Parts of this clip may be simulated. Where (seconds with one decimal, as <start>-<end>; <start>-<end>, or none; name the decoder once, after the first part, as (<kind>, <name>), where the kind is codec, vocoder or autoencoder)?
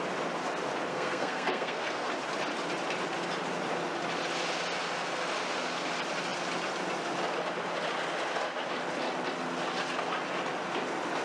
0.9-2.1 (codec, SNAC)